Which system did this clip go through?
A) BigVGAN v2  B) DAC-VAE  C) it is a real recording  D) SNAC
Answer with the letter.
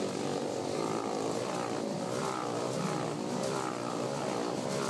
C